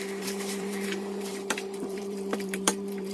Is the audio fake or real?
fake